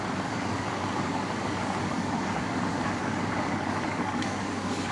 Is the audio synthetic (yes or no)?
yes